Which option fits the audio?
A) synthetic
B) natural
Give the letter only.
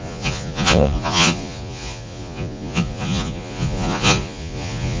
A